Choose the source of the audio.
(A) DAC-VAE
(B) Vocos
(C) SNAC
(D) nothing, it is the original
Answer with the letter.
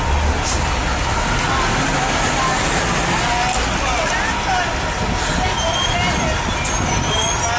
D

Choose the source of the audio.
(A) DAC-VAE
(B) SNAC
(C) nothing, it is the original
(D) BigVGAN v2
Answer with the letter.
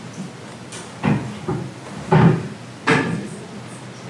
C